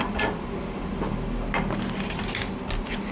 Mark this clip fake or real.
real